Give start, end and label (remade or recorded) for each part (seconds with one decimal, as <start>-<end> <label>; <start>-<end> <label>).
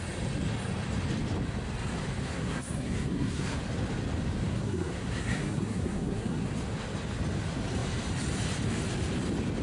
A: 0.0-2.2 recorded; 2.2-3.6 remade; 3.6-4.5 recorded; 4.5-6.5 remade; 6.5-9.6 recorded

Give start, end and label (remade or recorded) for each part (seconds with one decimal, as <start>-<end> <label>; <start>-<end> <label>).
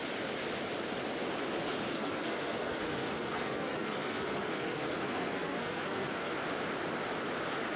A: 0.0-1.9 recorded; 1.9-6.3 remade; 6.3-7.8 recorded